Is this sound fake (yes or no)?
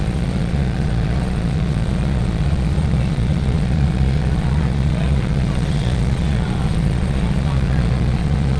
yes